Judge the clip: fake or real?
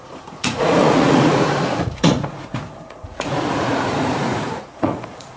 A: fake